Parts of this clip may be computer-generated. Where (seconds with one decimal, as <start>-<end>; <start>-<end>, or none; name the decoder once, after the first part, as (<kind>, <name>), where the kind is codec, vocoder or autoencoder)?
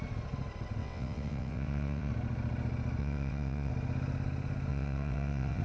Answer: 0.8-2.1 (vocoder, WaveNeXt); 3.0-3.7; 4.7-5.6